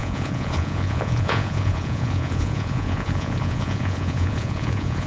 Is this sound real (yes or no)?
no